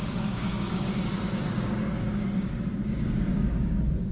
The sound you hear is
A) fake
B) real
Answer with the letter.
A